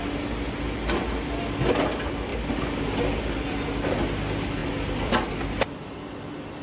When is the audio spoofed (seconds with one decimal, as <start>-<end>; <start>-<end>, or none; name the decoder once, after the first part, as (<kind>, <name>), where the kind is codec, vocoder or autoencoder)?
none